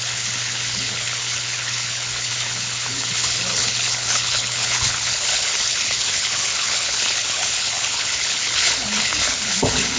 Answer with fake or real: fake